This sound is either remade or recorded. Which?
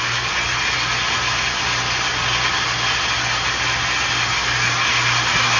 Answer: recorded